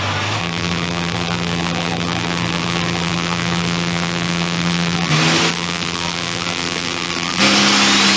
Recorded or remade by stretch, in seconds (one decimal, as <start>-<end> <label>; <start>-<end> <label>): 0.0-0.4 recorded; 0.4-5.1 remade; 5.1-5.5 recorded; 5.5-7.4 remade; 7.4-8.2 recorded